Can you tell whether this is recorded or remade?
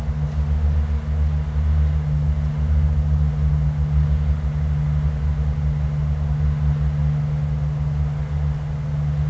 recorded